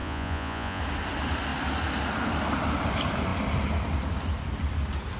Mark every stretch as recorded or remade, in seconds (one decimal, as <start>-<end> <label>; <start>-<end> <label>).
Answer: 0.0-0.8 remade; 0.8-5.2 recorded

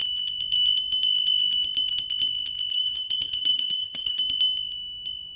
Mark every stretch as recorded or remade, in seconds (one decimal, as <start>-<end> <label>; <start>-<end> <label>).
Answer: 0.0-2.7 recorded; 2.7-4.2 remade; 4.2-5.4 recorded

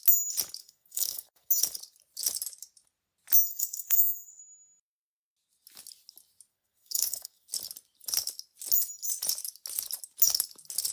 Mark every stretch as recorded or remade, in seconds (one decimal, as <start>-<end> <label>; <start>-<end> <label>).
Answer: 0.0-0.6 recorded; 0.6-1.5 remade; 1.5-3.5 recorded; 3.5-4.4 remade; 4.4-6.5 recorded; 6.5-7.5 remade; 7.5-10.9 recorded

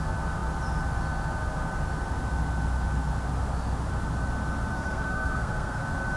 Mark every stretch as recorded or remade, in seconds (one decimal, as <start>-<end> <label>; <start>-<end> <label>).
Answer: 0.0-4.7 recorded; 4.7-5.8 remade; 5.8-6.2 recorded

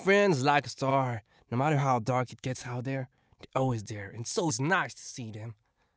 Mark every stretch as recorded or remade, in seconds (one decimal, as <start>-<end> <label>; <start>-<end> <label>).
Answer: 0.0-0.9 recorded; 0.9-4.5 remade; 4.5-6.0 recorded

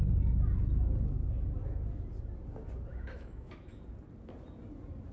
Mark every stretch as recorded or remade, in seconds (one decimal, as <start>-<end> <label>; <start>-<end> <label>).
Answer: 0.0-2.9 recorded; 2.9-3.8 remade; 3.8-5.1 recorded